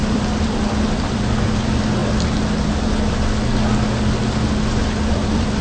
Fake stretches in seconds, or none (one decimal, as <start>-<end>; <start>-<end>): 0.0-2.0; 5.1-5.6